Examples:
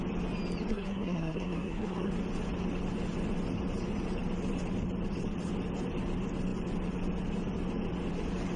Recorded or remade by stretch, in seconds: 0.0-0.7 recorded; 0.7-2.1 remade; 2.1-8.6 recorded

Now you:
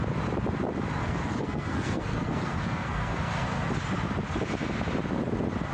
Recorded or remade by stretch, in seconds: 0.0-1.0 recorded; 1.0-3.7 remade; 3.7-5.7 recorded

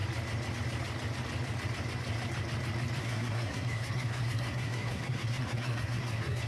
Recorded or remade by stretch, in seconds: 0.0-3.0 recorded; 3.0-6.5 remade

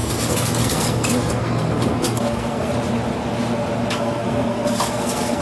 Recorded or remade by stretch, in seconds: 0.0-2.7 remade; 2.7-3.9 recorded; 3.9-5.4 remade

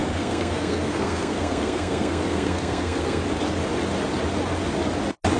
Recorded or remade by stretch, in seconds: 0.0-3.2 remade; 3.2-5.4 recorded

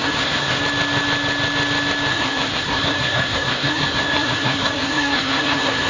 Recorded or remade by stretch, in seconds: 0.0-0.6 remade; 0.6-2.1 recorded; 2.1-5.9 remade